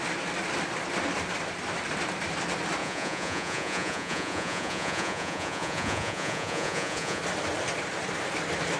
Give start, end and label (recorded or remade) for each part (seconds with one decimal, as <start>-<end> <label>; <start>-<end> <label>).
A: 0.0-2.8 recorded; 2.8-7.2 remade; 7.2-8.8 recorded

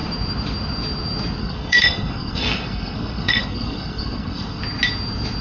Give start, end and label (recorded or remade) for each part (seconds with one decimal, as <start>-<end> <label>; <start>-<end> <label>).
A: 0.0-1.4 recorded; 1.4-4.6 remade; 4.6-5.4 recorded

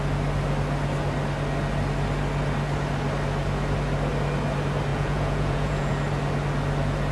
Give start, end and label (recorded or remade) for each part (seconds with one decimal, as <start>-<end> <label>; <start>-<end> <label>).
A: 0.0-4.9 recorded; 4.9-5.9 remade; 5.9-7.1 recorded

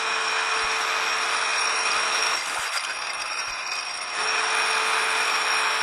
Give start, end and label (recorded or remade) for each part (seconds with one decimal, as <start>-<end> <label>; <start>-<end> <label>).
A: 0.0-2.9 recorded; 2.9-3.6 remade; 3.6-5.8 recorded

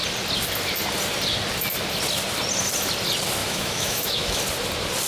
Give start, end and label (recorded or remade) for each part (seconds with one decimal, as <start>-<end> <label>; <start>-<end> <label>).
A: 0.0-3.4 recorded; 3.4-4.4 remade; 4.4-5.1 recorded

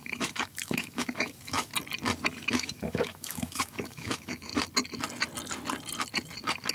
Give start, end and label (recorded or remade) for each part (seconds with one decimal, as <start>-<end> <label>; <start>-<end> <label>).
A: 0.0-1.7 remade; 1.7-2.5 recorded; 2.5-4.5 remade; 4.5-6.7 recorded

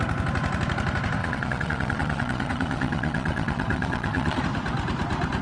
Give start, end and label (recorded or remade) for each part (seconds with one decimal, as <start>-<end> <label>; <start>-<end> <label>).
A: 0.0-1.2 recorded; 1.2-4.4 remade; 4.4-5.4 recorded

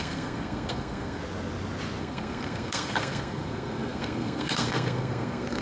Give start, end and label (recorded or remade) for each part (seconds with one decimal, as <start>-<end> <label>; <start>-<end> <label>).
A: 0.0-1.2 remade; 1.2-2.0 recorded; 2.0-5.6 remade